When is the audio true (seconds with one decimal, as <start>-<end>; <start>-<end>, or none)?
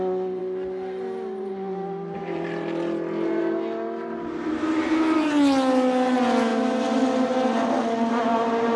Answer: 0.0-8.8